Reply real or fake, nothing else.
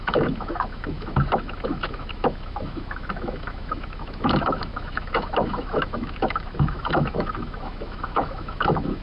fake